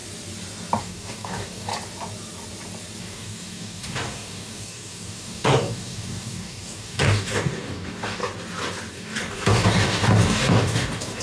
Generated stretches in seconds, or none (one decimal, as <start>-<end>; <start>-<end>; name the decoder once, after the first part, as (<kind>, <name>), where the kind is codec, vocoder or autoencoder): 0.8-1.7 (codec, DAC); 3.0-8.2; 8.9-11.2